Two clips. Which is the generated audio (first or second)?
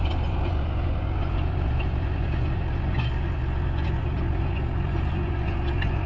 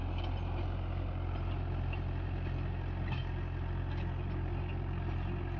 first